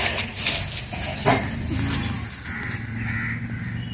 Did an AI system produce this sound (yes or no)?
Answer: no